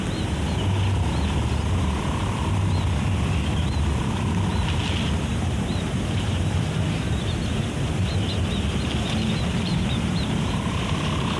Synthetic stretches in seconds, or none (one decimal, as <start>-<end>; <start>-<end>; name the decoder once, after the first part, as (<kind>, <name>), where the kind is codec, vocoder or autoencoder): 5.3-8.1 (vocoder, BigVGAN v2); 9.7-10.8